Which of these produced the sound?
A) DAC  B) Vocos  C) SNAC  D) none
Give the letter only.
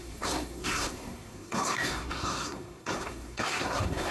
C